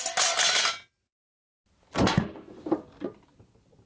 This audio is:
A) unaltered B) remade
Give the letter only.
A